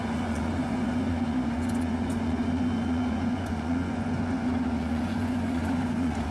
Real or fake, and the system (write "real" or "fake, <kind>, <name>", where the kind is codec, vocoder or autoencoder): fake, vocoder, Vocos